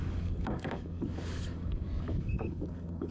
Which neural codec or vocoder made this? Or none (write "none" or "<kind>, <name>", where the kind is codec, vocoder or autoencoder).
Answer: codec, DAC